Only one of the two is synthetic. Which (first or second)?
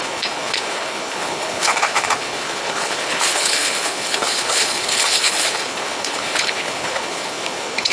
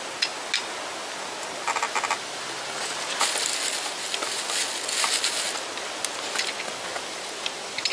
first